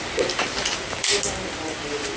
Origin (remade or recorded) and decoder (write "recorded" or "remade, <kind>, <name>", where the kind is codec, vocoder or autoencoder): recorded